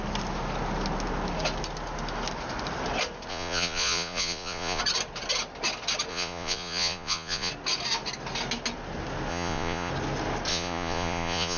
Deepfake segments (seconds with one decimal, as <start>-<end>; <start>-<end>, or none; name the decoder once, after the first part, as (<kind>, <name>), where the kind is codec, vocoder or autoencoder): 3.3-4.8 (vocoder, Vocos); 6.1-7.5; 9.3-9.9; 10.5-11.6